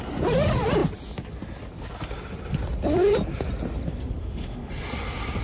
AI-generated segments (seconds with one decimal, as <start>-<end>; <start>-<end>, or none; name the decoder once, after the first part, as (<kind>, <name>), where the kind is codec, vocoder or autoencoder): 4.2-4.7 (autoencoder, DAC-VAE)